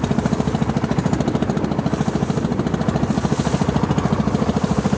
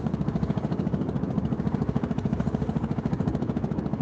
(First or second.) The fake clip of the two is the second